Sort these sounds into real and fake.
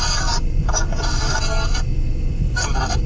real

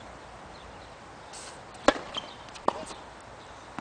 real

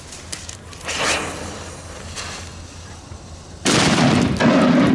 real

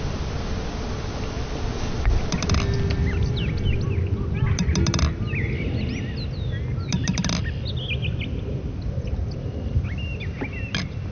real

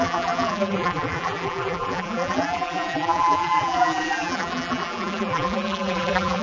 fake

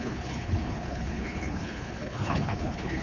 fake